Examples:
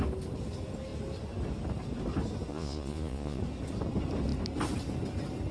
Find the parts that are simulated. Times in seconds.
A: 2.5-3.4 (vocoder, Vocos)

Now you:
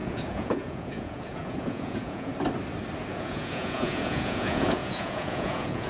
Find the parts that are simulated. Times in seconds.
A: 0.0-2.3 (vocoder, Vocos); 3.1-5.9

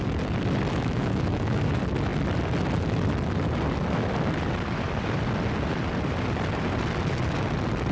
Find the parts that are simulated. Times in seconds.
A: 0.7-1.7 (autoencoder, DAC-VAE)

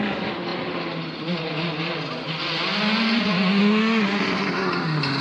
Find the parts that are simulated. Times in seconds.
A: none

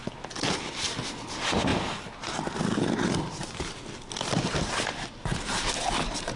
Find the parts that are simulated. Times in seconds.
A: none